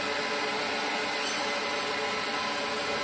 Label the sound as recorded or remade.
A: recorded